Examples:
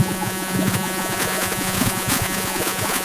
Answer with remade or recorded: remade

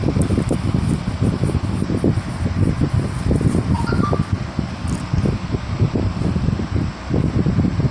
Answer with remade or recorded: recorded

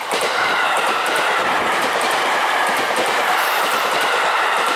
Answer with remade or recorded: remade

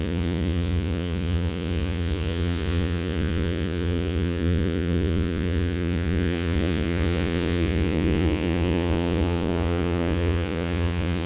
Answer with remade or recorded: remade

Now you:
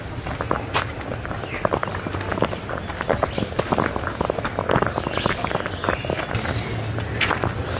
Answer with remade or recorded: recorded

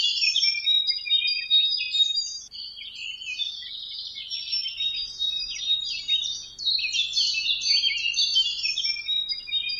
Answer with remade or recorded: recorded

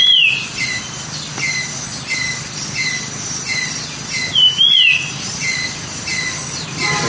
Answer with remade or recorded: recorded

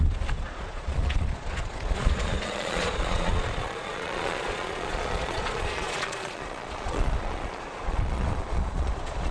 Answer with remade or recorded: remade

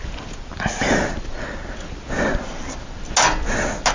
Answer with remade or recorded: recorded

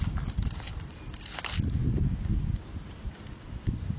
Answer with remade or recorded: recorded